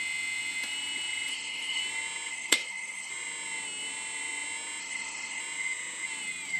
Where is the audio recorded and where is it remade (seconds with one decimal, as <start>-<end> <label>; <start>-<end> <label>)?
0.0-1.3 recorded; 1.3-1.8 remade; 1.8-2.3 recorded; 2.3-3.1 remade; 3.1-4.8 recorded; 4.8-5.4 remade; 5.4-6.6 recorded